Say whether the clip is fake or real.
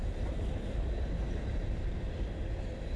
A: fake